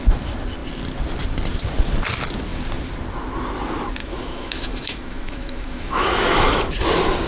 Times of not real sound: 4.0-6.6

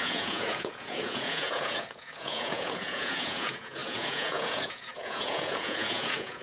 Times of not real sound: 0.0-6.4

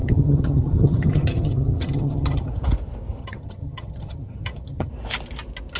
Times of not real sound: 0.0-2.5; 3.2-4.9

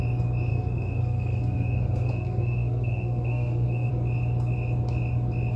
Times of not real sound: 0.5-3.9

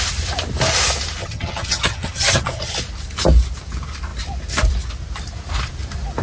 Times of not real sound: 1.2-2.7